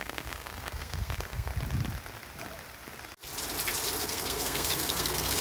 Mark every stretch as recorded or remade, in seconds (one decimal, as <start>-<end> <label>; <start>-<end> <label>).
0.0-1.5 remade; 1.5-4.0 recorded; 4.0-5.4 remade